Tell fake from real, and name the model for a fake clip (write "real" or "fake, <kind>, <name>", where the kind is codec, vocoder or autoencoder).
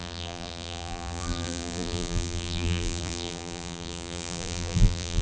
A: fake, vocoder, BigVGAN v2